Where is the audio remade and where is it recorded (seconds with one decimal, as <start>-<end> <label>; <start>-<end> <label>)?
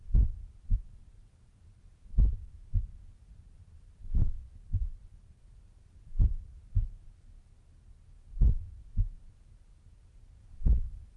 0.0-4.7 recorded; 4.7-5.4 remade; 5.4-10.4 recorded; 10.4-11.2 remade